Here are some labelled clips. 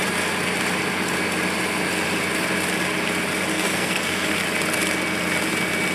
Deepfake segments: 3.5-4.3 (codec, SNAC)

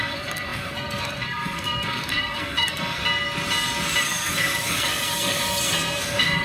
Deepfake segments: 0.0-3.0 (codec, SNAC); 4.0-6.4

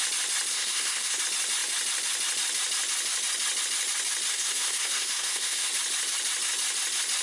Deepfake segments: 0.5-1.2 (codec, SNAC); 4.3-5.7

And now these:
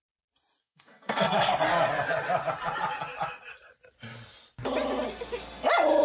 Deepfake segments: 0.6-1.5 (codec, SNAC)